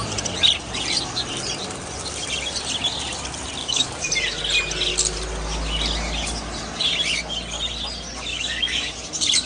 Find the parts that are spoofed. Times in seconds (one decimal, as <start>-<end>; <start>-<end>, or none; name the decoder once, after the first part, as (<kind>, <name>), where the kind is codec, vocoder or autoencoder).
3.6-4.1 (codec, DAC); 8.3-8.9